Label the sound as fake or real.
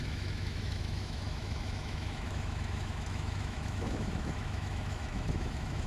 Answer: fake